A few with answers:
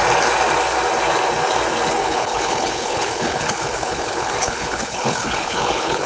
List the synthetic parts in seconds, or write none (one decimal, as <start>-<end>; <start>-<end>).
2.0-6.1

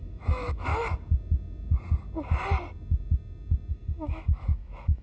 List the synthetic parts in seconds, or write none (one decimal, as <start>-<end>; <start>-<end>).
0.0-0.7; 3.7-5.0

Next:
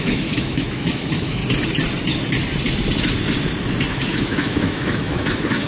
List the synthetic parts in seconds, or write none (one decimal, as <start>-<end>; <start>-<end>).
0.0-1.4; 3.9-5.7

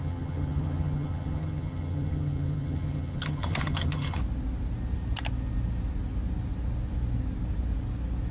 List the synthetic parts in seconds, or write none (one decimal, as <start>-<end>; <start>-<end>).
0.0-4.2